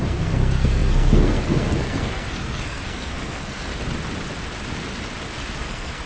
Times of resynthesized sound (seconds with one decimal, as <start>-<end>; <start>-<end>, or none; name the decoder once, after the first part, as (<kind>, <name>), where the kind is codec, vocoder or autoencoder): 0.0-3.7 (codec, SNAC); 5.6-6.1

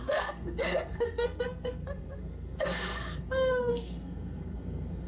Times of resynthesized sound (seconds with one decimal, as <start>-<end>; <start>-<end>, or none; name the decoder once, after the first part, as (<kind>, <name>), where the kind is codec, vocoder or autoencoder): 0.0-5.1 (codec, SNAC)

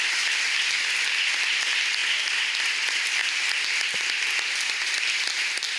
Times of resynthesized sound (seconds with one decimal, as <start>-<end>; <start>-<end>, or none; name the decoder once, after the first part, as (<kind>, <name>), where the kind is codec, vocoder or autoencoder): none

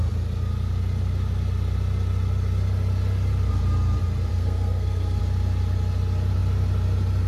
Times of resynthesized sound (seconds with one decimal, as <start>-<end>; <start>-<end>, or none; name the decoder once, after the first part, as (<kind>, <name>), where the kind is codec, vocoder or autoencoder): 4.3-5.2 (codec, SNAC)

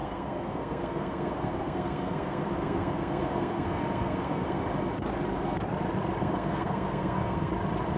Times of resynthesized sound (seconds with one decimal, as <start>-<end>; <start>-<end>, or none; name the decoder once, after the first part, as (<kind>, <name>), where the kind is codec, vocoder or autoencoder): 0.0-4.6 (codec, SNAC); 6.2-7.5